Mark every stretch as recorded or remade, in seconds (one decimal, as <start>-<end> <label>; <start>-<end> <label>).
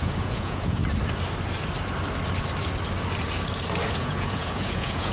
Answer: 0.0-0.8 remade; 0.8-3.9 recorded; 3.9-5.1 remade